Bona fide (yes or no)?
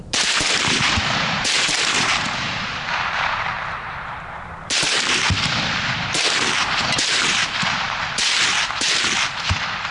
no